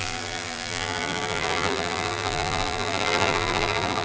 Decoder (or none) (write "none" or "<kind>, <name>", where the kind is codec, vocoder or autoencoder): vocoder, BigVGAN v2